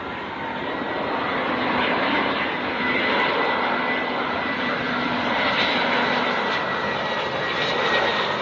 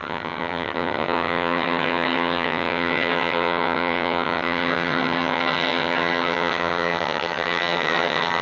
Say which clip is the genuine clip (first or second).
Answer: first